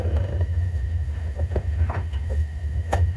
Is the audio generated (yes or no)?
yes